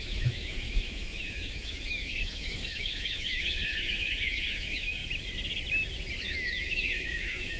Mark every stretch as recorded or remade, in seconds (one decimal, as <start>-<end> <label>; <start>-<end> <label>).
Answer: 0.0-5.0 remade; 5.0-6.2 recorded; 6.2-7.6 remade